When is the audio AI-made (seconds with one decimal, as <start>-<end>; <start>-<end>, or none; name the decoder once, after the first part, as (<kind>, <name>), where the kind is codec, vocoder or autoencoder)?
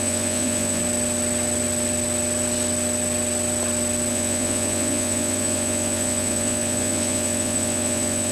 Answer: 0.0-0.8 (vocoder, Vocos); 4.1-8.3